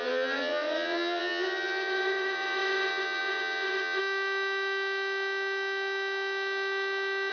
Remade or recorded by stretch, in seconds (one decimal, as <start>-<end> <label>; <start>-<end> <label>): 0.0-4.0 remade; 4.0-7.3 recorded